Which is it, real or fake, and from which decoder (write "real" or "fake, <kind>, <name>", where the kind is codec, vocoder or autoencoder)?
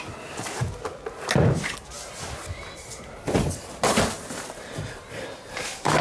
real